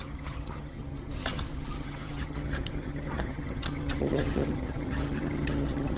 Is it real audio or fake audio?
fake